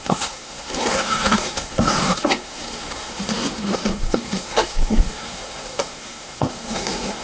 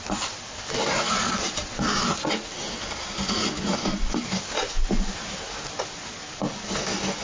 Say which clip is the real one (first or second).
second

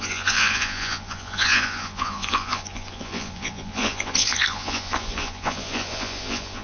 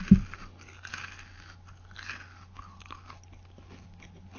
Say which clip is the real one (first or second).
second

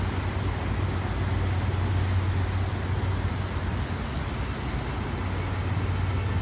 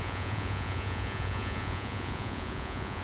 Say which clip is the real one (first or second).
first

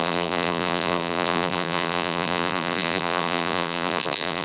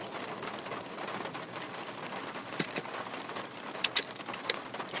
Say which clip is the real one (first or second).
second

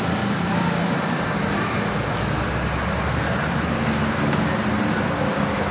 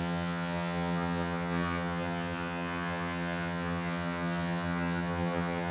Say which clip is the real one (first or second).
first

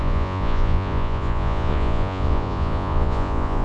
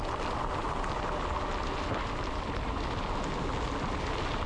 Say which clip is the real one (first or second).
second